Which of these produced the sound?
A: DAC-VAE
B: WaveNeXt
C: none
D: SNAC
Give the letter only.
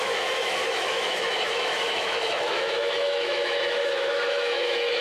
A